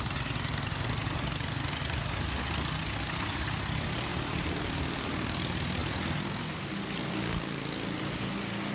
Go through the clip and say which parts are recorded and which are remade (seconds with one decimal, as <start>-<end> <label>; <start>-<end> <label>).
0.0-4.1 recorded; 4.1-4.7 remade; 4.7-8.7 recorded